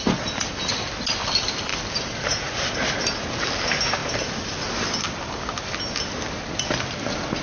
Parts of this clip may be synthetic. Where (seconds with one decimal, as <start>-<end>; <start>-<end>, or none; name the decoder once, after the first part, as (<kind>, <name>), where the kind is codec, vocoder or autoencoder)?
none